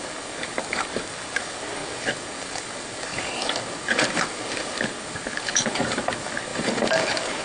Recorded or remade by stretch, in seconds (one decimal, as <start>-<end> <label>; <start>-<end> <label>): 0.0-7.4 remade